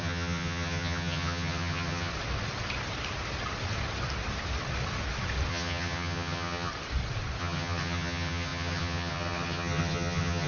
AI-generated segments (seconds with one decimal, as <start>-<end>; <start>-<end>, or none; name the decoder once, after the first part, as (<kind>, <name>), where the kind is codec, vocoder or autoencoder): 0.0-2.1 (vocoder, HiFi-GAN); 5.5-6.7; 7.4-10.5